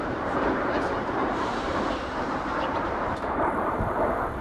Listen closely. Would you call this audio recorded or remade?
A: remade